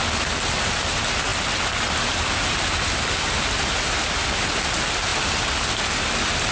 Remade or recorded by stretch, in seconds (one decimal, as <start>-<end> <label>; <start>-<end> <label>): 0.0-6.5 recorded